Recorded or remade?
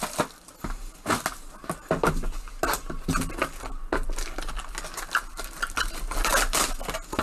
recorded